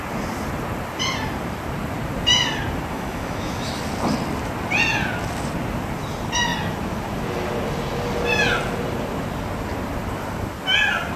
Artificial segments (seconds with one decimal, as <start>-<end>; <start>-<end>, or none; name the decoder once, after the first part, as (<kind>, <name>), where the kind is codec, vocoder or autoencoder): 2.9-3.8 (autoencoder, DAC-VAE)